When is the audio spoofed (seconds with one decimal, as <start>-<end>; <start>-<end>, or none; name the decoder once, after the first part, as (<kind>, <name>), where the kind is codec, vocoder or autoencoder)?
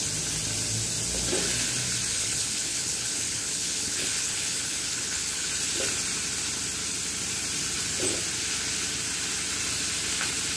2.1-5.5 (codec, HILCodec)